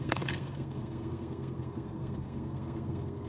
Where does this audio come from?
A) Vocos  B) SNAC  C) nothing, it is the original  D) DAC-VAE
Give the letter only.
B